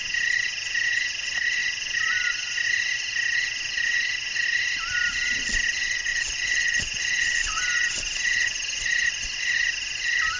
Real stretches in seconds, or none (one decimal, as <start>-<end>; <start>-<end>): 0.0-6.1; 7.6-10.4

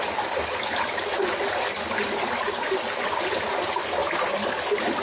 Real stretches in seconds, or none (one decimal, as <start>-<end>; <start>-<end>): 0.0-5.0

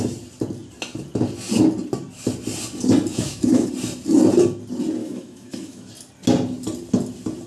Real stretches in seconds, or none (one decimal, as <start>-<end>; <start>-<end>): 0.0-3.1; 3.7-5.0; 5.9-7.5